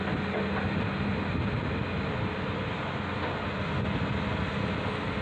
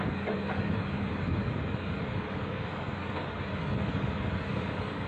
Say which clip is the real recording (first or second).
first